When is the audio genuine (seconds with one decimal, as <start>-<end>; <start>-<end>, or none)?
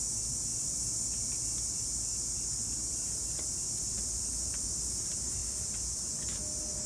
0.0-0.5; 4.3-6.9